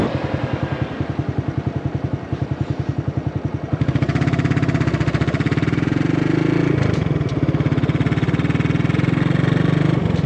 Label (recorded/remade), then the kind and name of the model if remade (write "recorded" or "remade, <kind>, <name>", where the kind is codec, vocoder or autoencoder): recorded